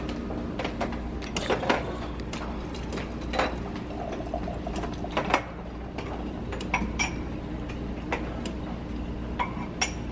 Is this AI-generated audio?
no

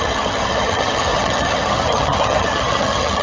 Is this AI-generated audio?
yes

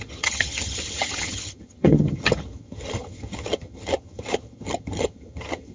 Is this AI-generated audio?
yes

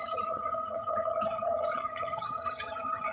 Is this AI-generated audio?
yes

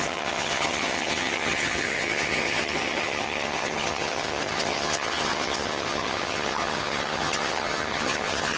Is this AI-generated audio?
yes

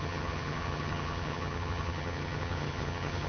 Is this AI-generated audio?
yes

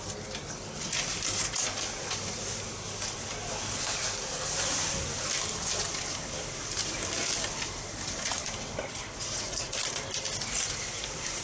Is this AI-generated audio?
no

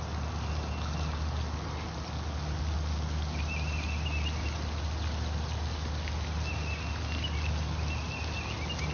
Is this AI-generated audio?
no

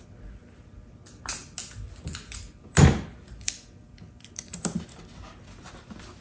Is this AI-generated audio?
no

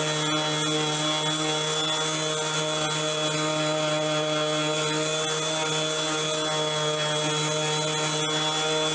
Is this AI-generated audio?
no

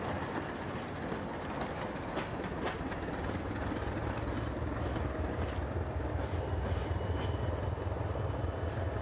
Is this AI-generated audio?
no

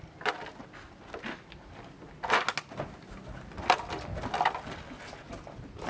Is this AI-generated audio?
no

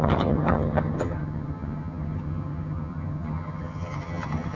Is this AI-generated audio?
yes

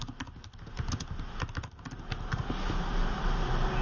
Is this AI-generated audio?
no